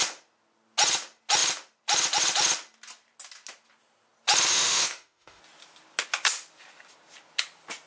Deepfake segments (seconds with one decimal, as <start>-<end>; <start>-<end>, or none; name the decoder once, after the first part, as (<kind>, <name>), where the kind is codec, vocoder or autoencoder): 4.5-5.4 (autoencoder, DAC-VAE)